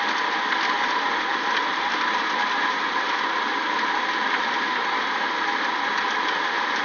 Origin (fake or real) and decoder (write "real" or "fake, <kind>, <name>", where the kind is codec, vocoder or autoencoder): real